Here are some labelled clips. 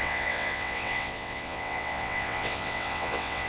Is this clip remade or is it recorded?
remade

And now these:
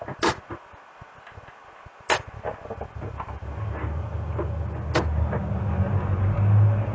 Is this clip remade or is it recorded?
recorded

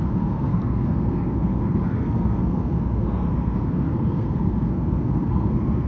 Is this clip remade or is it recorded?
remade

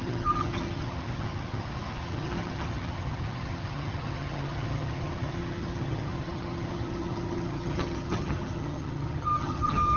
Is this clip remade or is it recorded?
remade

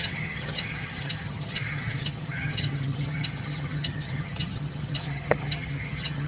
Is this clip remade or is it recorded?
remade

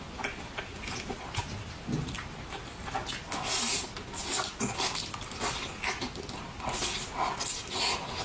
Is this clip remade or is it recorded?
recorded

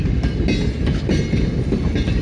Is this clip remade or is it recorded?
recorded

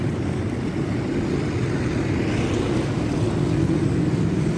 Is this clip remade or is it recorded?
recorded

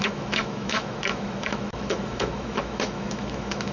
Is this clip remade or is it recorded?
remade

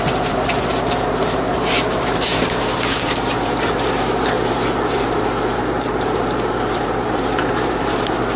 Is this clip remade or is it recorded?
remade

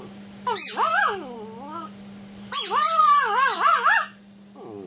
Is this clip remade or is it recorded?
remade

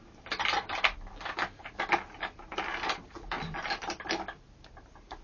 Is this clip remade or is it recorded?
recorded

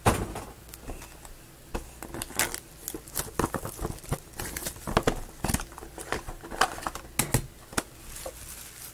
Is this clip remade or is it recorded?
recorded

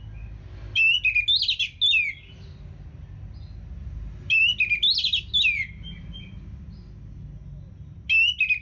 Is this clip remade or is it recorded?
recorded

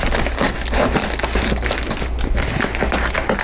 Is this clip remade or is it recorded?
recorded